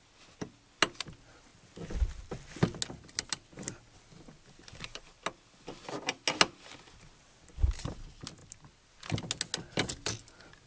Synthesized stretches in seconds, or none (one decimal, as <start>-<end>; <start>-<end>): none